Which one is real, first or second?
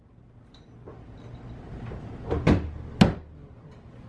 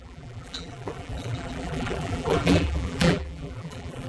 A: first